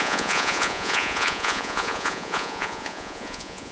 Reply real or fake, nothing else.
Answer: fake